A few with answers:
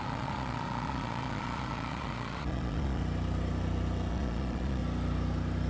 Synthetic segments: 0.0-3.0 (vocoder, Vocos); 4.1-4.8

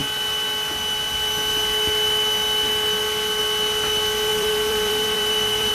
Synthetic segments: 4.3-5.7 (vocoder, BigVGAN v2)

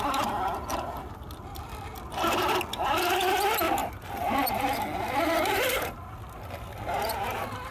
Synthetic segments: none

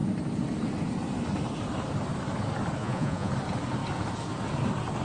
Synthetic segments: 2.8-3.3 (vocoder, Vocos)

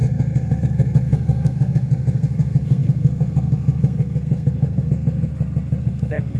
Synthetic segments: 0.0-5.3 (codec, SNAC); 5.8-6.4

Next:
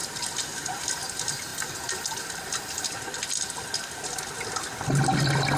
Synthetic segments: none

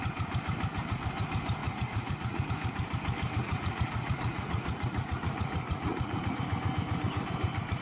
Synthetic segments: 1.6-2.5 (vocoder, Vocos); 3.4-6.4